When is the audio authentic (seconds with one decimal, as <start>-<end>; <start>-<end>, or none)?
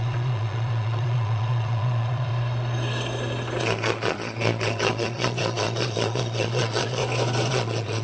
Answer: 2.3-3.6; 7.0-7.5